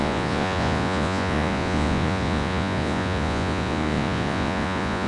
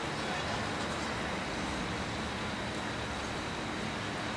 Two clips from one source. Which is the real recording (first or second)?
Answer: second